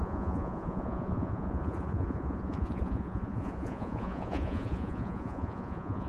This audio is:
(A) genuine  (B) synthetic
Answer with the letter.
B